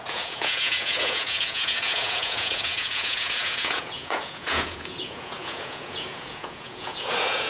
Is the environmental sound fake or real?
fake